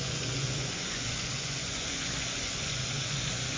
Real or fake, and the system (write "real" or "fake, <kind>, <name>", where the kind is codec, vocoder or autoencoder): fake, vocoder, Vocos